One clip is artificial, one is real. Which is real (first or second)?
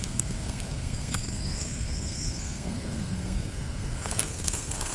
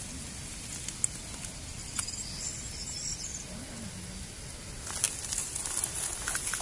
second